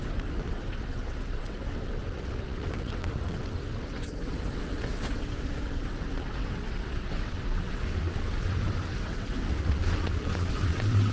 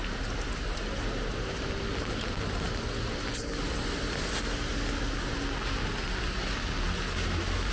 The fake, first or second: first